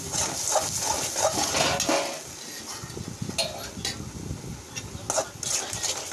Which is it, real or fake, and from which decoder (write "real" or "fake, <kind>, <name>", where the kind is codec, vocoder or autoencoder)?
real